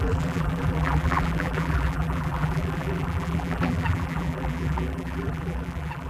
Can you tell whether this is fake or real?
fake